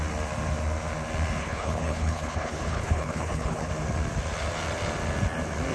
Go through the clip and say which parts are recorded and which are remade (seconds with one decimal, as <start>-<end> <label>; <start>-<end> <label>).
0.0-1.4 recorded; 1.4-3.7 remade; 3.7-5.7 recorded